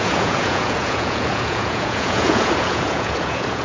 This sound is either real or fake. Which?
fake